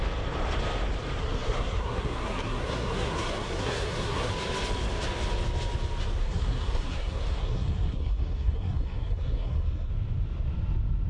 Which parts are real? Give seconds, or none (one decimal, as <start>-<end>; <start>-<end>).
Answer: 0.0-1.2; 4.3-6.2; 9.9-11.1